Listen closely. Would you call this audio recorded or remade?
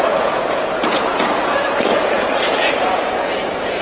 remade